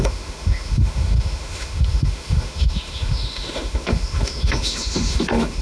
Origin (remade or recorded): remade